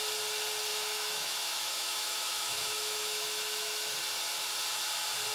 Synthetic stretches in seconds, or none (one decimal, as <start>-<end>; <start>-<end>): 0.7-3.9